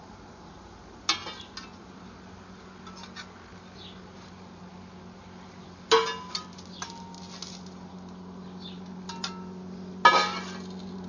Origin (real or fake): real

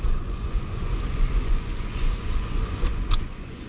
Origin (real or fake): fake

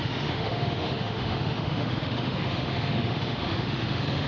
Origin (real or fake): fake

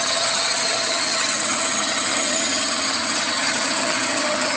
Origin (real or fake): fake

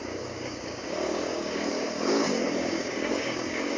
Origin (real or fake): fake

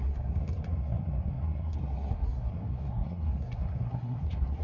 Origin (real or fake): fake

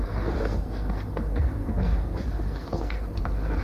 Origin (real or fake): fake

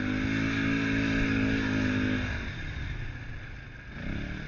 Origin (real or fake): real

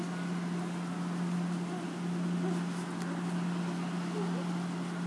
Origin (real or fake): real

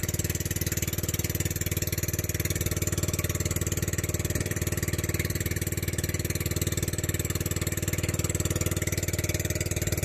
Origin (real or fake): real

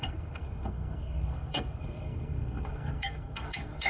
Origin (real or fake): fake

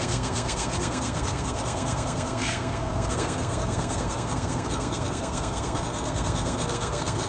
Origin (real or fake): fake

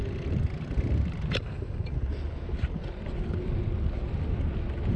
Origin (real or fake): real